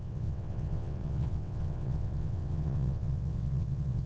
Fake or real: fake